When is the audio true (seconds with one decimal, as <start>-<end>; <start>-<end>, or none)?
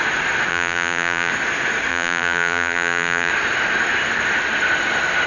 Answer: 0.0-0.5; 1.3-1.9; 3.3-5.3